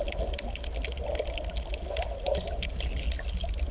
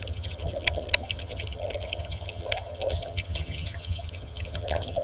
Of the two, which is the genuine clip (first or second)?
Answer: first